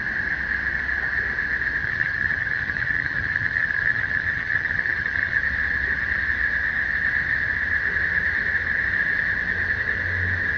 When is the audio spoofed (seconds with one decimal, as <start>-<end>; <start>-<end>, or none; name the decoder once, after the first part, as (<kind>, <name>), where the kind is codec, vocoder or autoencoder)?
1.8-5.4 (vocoder, HiFi-GAN)